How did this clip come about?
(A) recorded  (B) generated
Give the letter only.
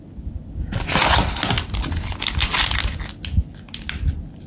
A